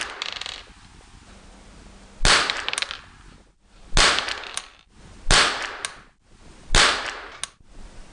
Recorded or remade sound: recorded